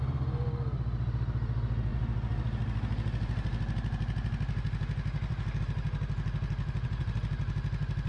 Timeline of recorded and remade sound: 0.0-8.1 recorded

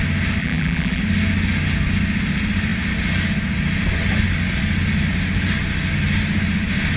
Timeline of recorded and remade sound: 0.0-0.4 recorded; 0.4-1.0 remade; 1.0-7.0 recorded

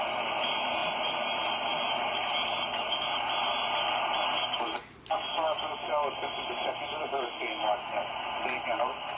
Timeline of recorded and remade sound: 0.0-0.8 recorded; 0.8-1.7 remade; 1.7-9.2 recorded

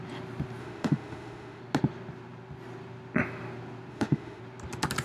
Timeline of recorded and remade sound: 0.0-0.6 recorded; 0.6-1.6 remade; 1.6-3.9 recorded; 3.9-4.4 remade; 4.4-5.0 recorded

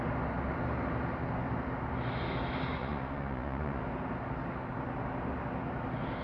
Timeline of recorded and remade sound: 0.0-2.8 recorded; 2.8-3.8 remade; 3.8-6.2 recorded

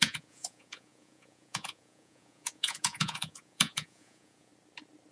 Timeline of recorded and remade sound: 0.0-4.5 remade; 4.5-5.1 recorded

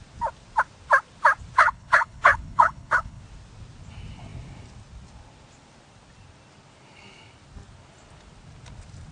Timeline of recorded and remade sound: 0.0-1.6 recorded; 1.6-3.2 remade; 3.2-9.1 recorded